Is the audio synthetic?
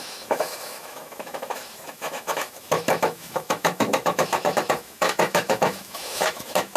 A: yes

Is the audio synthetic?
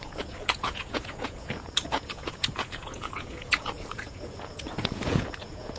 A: yes